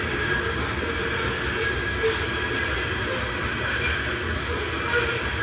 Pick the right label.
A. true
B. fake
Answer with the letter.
A